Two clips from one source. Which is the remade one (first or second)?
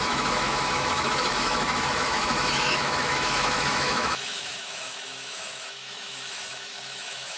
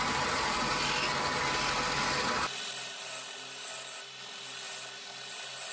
first